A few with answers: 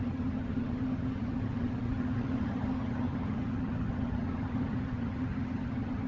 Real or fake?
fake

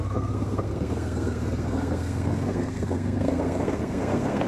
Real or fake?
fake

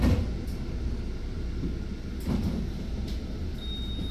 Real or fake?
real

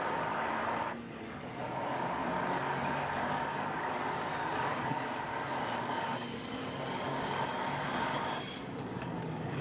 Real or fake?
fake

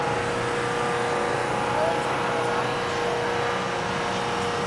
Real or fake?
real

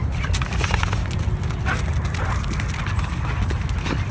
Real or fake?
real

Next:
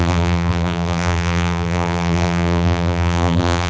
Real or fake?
fake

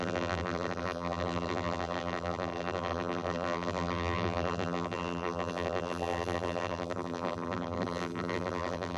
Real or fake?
fake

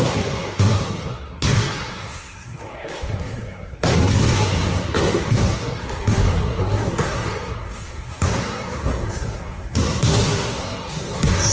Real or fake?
fake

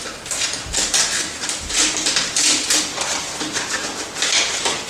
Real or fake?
real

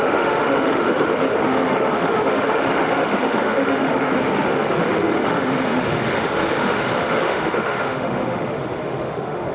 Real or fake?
fake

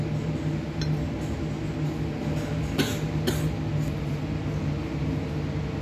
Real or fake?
real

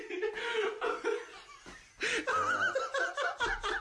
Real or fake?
real